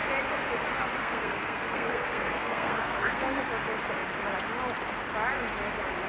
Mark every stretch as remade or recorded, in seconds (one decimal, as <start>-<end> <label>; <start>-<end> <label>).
0.0-1.0 recorded; 1.0-3.4 remade; 3.4-6.1 recorded